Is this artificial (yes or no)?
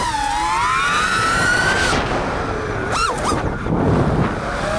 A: no